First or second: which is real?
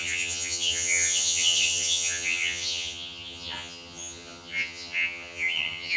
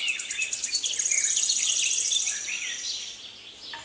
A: second